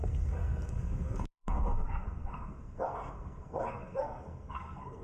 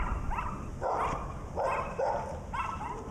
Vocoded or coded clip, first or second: first